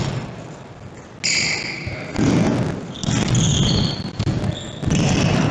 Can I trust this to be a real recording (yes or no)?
yes